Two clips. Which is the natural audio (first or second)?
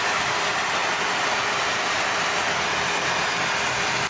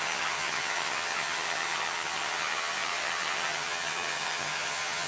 first